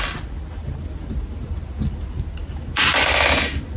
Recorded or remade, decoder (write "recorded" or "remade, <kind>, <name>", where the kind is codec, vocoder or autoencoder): recorded